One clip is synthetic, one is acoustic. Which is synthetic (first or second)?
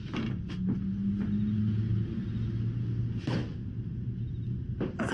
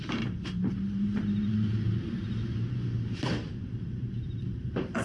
second